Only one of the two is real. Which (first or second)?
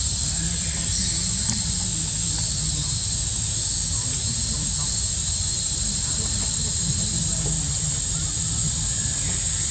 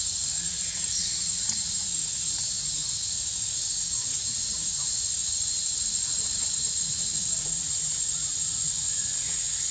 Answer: first